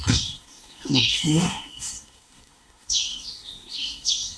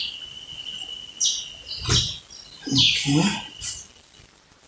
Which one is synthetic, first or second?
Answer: first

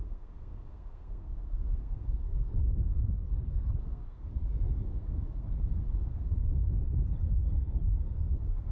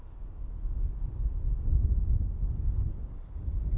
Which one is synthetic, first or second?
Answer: first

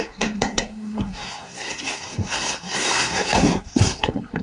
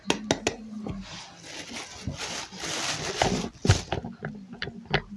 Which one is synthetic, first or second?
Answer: first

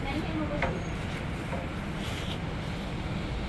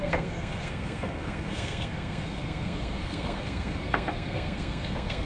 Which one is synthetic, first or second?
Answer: second